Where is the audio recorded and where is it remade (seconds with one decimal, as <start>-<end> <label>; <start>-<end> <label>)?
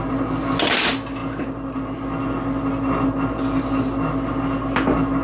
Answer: 0.0-5.2 recorded